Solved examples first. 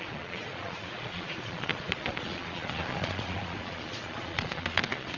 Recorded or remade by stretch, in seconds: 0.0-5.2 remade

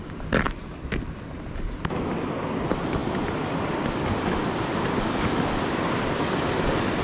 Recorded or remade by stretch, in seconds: 0.0-7.0 recorded